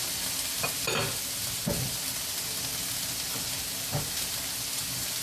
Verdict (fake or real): real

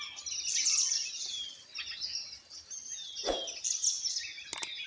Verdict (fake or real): real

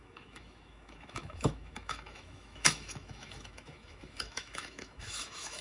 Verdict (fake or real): fake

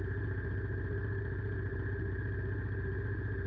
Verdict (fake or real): real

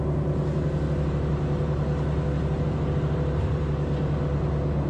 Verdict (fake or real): real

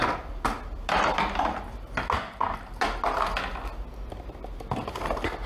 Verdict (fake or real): real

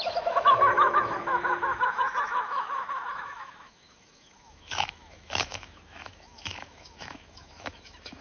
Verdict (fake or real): fake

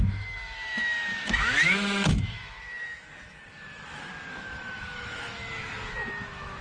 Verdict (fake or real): fake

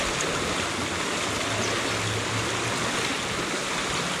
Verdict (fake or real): real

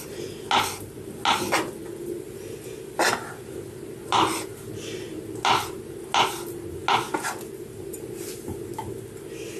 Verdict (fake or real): real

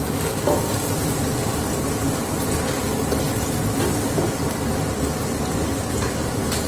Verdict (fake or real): real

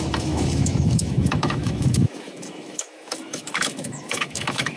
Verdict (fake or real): fake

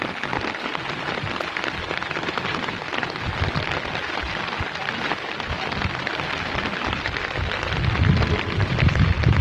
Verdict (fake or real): real